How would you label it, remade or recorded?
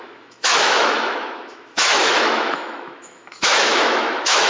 remade